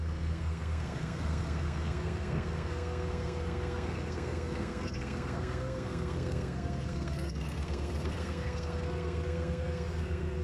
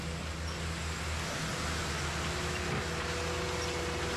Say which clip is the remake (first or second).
first